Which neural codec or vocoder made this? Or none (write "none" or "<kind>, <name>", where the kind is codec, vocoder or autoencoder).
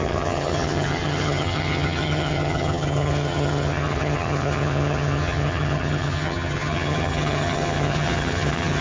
vocoder, HiFi-GAN